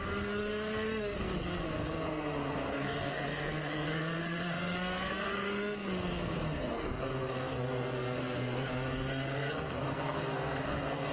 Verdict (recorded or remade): remade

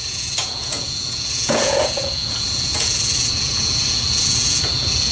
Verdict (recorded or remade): remade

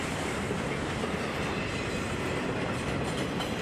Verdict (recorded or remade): recorded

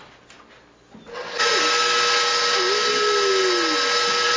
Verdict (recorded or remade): recorded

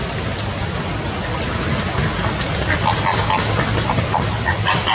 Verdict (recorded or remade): recorded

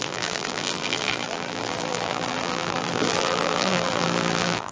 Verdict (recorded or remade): remade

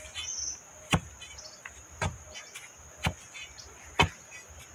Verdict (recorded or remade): recorded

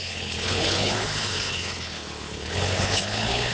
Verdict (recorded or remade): remade